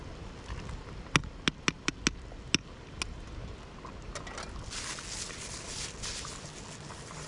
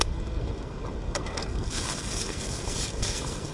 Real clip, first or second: first